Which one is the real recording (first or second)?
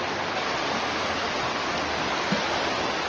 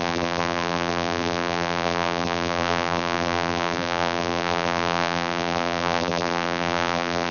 first